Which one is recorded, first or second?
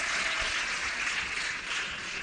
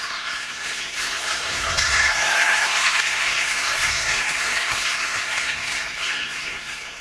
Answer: first